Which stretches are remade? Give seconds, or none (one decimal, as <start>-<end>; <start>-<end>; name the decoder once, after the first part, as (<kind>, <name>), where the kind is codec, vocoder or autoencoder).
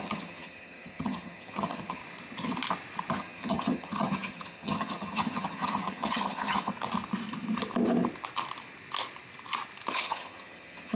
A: 0.0-2.0 (vocoder, HiFi-GAN); 3.1-6.7; 9.9-10.9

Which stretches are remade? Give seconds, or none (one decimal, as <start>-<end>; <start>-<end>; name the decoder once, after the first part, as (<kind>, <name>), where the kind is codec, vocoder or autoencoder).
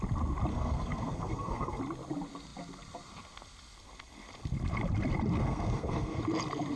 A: 0.5-1.8 (codec, SNAC); 5.4-6.2